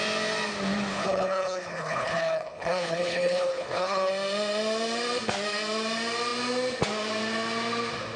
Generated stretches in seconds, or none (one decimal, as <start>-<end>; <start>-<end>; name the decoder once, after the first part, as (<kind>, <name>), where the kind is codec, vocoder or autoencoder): 0.9-4.1 (codec, HILCodec)